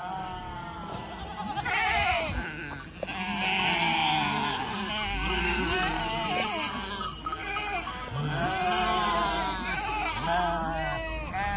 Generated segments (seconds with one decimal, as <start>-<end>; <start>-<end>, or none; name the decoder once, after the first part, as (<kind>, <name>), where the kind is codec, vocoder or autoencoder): none